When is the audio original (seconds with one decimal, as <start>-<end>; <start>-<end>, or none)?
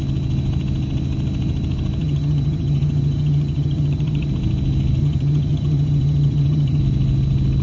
0.0-2.0; 4.3-5.0; 6.8-7.6